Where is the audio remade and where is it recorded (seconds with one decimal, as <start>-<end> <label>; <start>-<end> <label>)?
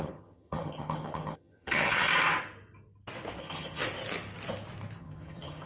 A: 0.0-2.1 remade; 2.1-3.4 recorded; 3.4-3.8 remade; 3.8-5.0 recorded; 5.0-5.7 remade